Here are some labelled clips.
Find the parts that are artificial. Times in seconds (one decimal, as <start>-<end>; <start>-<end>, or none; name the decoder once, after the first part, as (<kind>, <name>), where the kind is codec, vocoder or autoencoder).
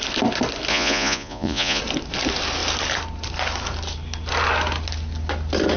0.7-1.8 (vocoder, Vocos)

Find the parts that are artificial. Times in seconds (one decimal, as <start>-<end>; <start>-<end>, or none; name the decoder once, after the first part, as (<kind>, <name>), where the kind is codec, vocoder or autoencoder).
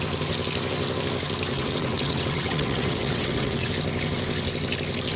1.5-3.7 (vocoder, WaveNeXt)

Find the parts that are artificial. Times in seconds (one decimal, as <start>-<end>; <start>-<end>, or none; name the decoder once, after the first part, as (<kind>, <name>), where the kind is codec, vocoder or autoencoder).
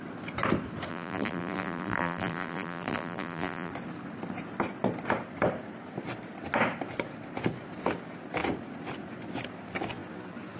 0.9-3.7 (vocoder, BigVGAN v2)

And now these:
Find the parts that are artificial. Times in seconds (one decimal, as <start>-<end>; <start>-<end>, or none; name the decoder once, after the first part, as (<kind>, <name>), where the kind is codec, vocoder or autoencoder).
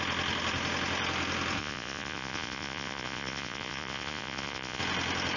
1.6-4.8 (vocoder, Vocos)